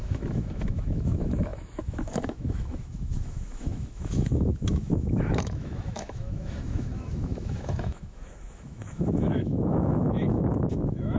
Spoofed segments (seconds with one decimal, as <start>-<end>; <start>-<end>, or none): 0.0-11.2